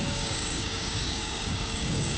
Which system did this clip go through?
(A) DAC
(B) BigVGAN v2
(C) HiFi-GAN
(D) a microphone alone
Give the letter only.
A